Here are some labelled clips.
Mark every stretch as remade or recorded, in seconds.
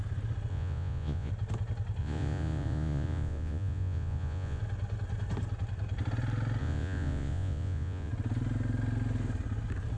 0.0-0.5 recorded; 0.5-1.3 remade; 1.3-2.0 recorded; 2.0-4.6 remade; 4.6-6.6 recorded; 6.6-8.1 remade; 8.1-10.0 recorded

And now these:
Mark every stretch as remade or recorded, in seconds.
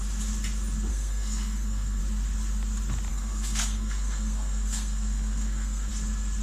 0.0-0.9 recorded; 0.9-2.0 remade; 2.0-3.1 recorded; 3.1-5.9 remade; 5.9-6.4 recorded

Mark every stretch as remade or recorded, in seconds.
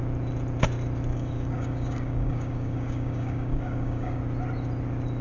0.0-1.1 recorded; 1.1-4.2 remade; 4.2-5.2 recorded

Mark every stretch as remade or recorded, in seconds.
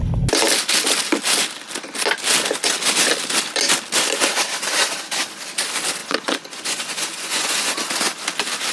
0.0-6.0 recorded; 6.0-7.8 remade; 7.8-8.7 recorded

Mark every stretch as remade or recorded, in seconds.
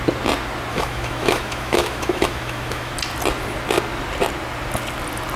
0.0-0.7 recorded; 0.7-2.9 remade; 2.9-5.4 recorded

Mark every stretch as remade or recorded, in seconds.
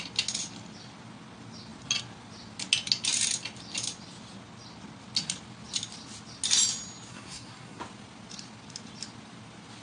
0.0-7.1 recorded; 7.1-7.8 remade; 7.8-9.8 recorded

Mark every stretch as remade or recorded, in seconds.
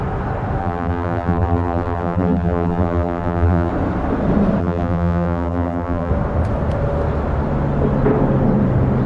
0.0-0.6 recorded; 0.6-3.7 remade; 3.7-4.6 recorded; 4.6-6.1 remade; 6.1-9.1 recorded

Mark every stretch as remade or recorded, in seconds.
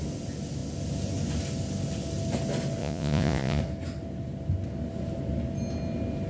0.0-2.8 recorded; 2.8-3.6 remade; 3.6-6.3 recorded